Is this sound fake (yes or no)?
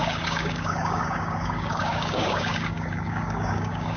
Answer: yes